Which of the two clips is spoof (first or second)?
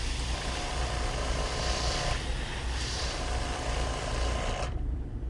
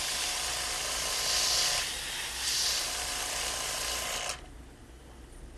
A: first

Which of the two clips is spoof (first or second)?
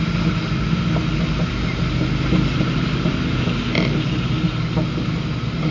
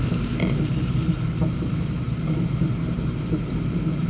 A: second